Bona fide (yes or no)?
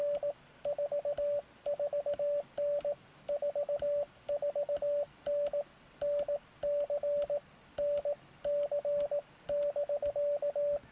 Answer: yes